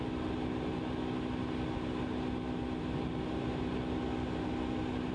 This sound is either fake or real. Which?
real